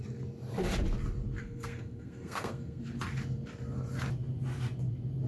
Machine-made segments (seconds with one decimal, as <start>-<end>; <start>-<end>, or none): 1.4-2.8